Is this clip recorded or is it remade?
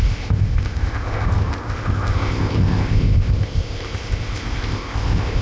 remade